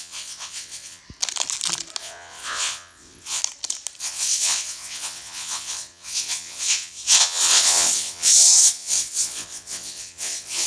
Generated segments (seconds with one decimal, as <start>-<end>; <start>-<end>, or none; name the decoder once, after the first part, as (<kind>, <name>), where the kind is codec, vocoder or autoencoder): 0.0-1.0 (vocoder, WaveNeXt); 2.0-3.4; 4.0-10.7

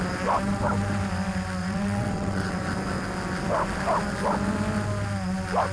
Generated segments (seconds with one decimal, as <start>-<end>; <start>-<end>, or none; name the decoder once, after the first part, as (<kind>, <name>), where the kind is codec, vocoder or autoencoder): 1.6-2.6 (vocoder, WaveNeXt)

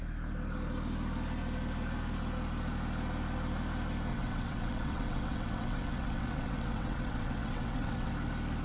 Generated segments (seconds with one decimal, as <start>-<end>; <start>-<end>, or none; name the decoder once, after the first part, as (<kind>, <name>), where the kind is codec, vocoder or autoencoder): 4.1-8.1 (vocoder, WaveNeXt)

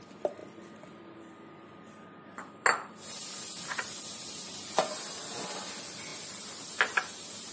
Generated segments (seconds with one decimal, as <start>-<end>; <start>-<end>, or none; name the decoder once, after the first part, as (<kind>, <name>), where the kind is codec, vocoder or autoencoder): none

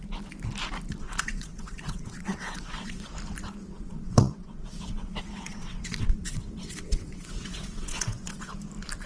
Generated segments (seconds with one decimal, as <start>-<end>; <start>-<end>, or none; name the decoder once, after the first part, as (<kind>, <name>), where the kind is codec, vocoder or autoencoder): 1.0-3.1 (vocoder, WaveNeXt); 3.6-8.5